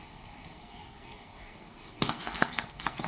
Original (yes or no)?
no